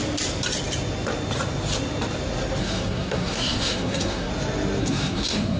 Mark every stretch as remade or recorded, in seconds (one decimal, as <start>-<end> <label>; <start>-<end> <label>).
0.0-2.6 recorded; 2.6-4.3 remade; 4.3-4.8 recorded; 4.8-5.6 remade